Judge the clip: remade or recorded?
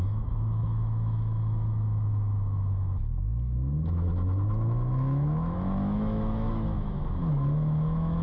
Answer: remade